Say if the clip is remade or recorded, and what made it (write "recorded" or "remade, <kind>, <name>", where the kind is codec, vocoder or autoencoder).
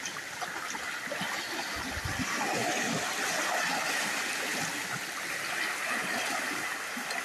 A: recorded